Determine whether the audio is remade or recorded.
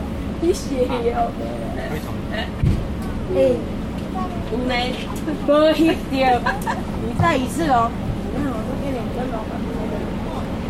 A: recorded